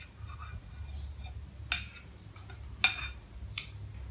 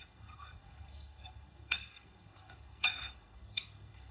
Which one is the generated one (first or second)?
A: second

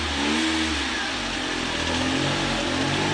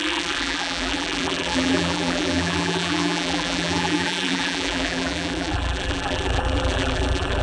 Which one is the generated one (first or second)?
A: second